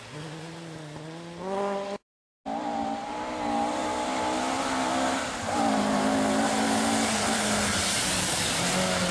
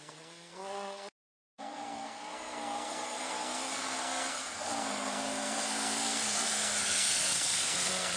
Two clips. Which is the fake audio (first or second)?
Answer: second